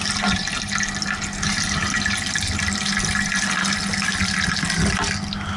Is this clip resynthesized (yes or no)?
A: no